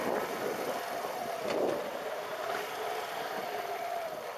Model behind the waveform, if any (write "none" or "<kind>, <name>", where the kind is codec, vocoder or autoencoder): none